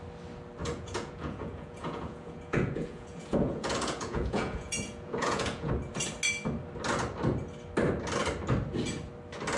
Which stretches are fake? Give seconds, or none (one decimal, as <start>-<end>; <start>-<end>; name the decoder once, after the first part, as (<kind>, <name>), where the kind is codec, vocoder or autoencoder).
0.6-5.7 (vocoder, Vocos)